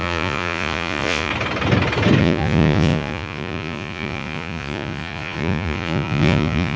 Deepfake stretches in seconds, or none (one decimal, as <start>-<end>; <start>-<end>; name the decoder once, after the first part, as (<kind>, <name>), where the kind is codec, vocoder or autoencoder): 0.0-1.3 (vocoder, Vocos); 2.2-6.8